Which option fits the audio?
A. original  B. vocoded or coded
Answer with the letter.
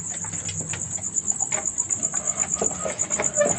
A